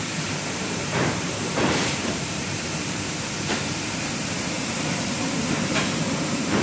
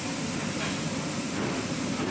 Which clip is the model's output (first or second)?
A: first